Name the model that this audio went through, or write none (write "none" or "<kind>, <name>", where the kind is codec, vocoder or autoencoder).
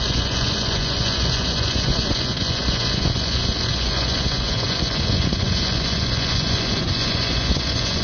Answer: vocoder, Vocos